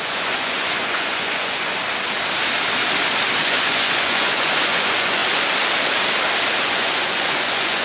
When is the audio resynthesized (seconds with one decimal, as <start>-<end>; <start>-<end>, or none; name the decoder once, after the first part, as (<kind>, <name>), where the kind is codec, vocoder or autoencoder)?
0.0-1.8 (vocoder, Vocos); 3.4-5.2; 6.6-7.8